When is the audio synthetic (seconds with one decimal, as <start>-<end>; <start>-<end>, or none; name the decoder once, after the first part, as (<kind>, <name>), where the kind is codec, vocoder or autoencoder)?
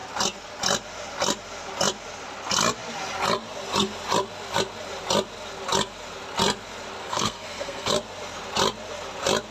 7.0-7.9 (codec, SNAC)